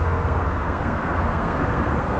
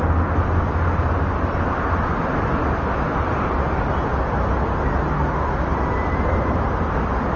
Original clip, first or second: second